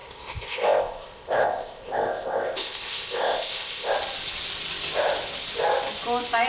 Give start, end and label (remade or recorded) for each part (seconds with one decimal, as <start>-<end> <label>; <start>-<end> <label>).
0.0-3.9 remade; 3.9-6.5 recorded